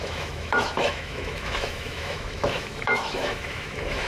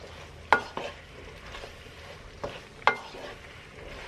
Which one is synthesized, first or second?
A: first